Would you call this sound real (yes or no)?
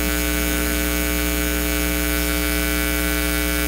no